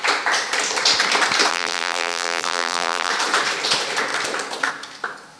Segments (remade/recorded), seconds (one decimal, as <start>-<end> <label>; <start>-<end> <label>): 0.0-1.5 recorded; 1.5-3.1 remade; 3.1-5.4 recorded